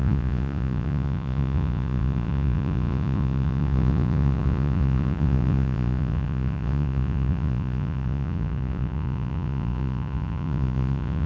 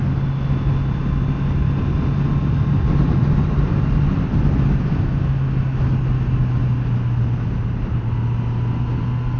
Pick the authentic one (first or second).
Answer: second